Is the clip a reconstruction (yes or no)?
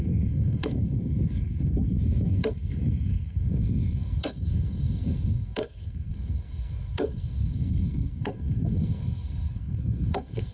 yes